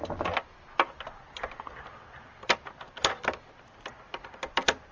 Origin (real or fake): real